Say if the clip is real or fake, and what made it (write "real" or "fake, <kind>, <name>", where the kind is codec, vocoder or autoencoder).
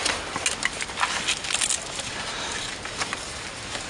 real